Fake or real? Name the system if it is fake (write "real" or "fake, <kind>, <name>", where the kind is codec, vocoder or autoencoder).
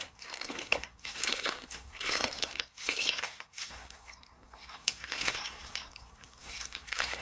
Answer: fake, codec, SNAC